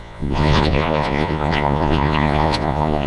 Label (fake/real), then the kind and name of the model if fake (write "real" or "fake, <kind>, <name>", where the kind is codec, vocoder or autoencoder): fake, vocoder, Vocos